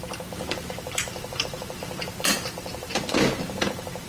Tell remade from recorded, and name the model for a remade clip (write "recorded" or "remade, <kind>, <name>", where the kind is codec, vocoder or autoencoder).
remade, vocoder, BigVGAN v2